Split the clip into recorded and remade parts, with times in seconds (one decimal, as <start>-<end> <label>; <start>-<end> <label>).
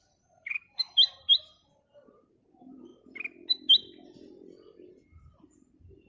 0.0-2.9 remade; 2.9-4.9 recorded; 4.9-6.1 remade